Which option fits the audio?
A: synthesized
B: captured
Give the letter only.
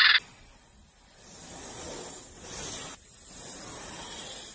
B